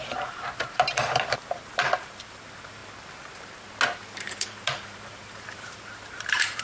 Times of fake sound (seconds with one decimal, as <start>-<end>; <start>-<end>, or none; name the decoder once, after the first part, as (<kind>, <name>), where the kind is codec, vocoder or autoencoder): 0.0-2.8 (vocoder, BigVGAN v2); 4.3-6.6